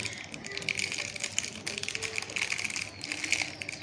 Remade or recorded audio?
recorded